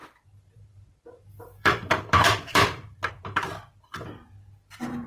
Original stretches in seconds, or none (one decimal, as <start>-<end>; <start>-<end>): 3.1-5.1